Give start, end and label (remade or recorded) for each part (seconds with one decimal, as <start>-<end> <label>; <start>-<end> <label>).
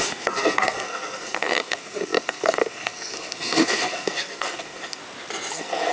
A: 0.0-5.0 remade; 5.0-5.5 recorded; 5.5-5.9 remade